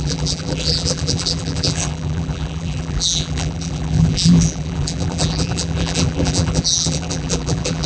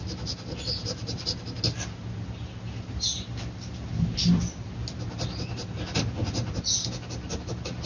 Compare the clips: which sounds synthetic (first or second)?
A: first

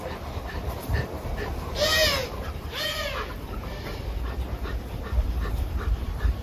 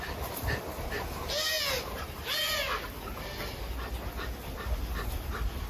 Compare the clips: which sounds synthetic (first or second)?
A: first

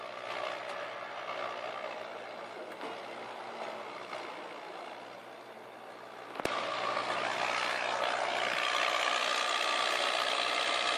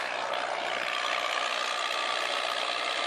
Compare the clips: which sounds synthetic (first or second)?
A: second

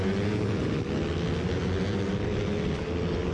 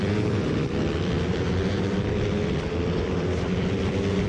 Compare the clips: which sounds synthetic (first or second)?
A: second